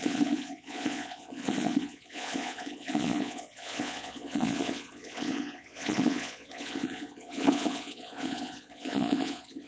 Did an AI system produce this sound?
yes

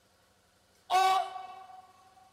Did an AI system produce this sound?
yes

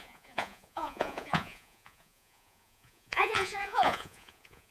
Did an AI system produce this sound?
yes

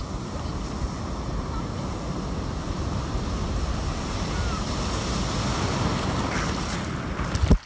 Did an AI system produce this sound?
no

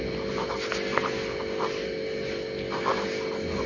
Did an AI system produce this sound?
no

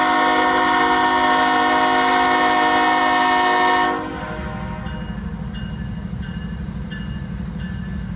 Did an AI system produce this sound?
no